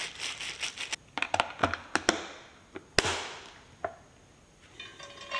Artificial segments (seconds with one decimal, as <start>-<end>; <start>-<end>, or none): 0.0-1.6; 4.4-5.4